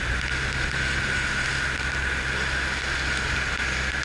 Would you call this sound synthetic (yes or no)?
no